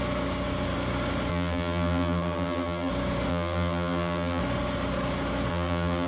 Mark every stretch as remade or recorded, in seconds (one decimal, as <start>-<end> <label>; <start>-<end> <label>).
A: 0.0-1.3 recorded; 1.3-2.9 remade; 2.9-3.3 recorded; 3.3-4.4 remade; 4.4-5.5 recorded; 5.5-6.1 remade